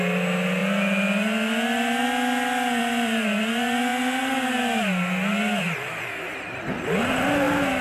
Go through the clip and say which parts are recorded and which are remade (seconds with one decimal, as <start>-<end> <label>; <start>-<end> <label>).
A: 0.0-7.8 recorded